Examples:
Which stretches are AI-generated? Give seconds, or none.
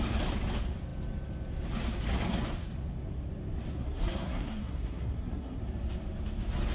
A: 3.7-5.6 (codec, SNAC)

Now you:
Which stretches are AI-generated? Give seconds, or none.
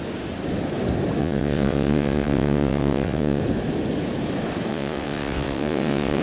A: 1.2-3.4 (vocoder, WaveNeXt); 4.7-6.2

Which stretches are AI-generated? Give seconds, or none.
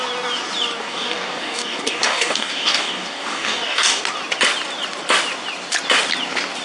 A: 0.8-4.0 (codec, DAC)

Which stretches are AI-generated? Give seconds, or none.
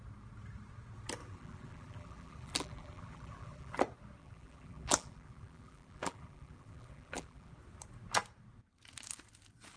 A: 1.2-3.8 (vocoder, BigVGAN v2); 4.2-7.5